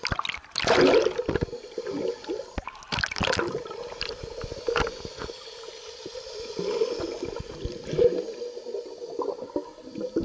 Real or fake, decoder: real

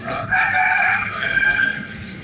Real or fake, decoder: fake, codec, SNAC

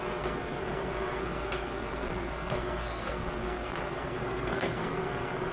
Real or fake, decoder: fake, codec, SNAC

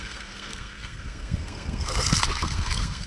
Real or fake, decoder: fake, codec, SNAC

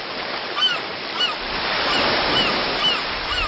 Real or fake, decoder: real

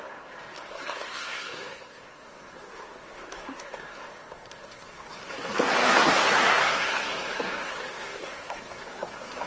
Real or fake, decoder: fake, codec, SNAC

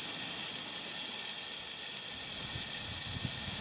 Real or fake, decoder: real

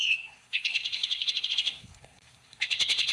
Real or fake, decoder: fake, codec, SNAC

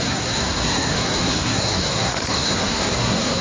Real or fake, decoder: fake, codec, SNAC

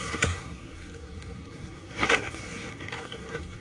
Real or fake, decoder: fake, codec, SNAC